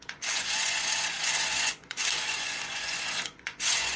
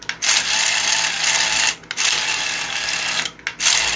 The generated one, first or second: first